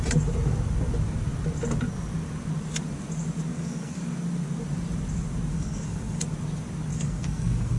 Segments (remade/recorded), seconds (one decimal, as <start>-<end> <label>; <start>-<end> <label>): 0.0-3.5 recorded; 3.5-4.0 remade; 4.0-5.5 recorded; 5.5-6.2 remade; 6.2-6.9 recorded; 6.9-7.8 remade